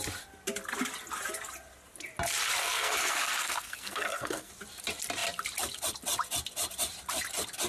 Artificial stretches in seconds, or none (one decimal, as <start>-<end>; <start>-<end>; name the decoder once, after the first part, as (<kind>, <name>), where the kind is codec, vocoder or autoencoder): 2.6-4.5 (codec, SNAC)